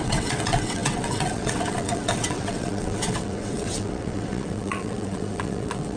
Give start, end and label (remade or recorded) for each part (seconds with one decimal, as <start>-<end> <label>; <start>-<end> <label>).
0.0-6.0 remade